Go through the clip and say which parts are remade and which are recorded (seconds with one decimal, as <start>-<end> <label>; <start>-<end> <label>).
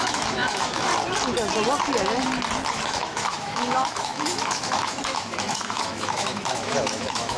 0.0-0.9 remade; 0.9-2.7 recorded; 2.7-7.4 remade